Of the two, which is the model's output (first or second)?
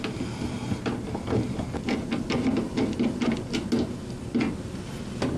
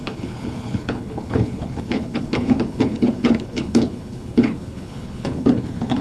second